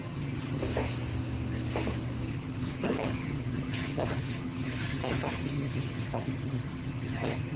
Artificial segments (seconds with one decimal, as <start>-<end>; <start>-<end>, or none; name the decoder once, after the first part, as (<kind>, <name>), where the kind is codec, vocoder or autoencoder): 0.0-0.6 (vocoder, HiFi-GAN); 2.3-7.6